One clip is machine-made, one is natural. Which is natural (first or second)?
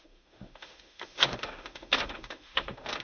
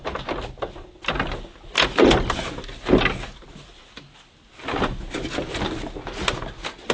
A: second